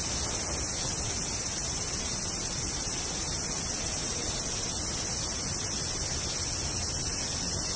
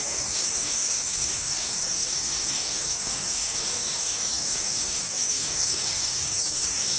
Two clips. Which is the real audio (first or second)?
first